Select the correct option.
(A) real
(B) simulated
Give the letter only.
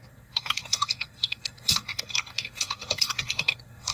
B